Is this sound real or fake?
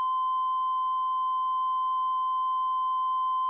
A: fake